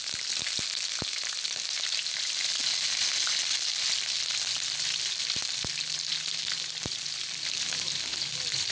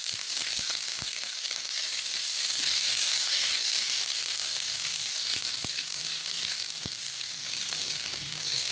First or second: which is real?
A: first